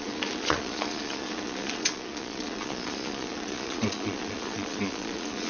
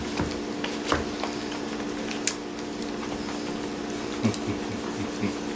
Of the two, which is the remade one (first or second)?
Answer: first